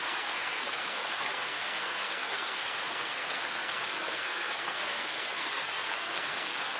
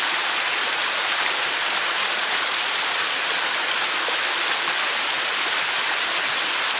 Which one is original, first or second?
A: second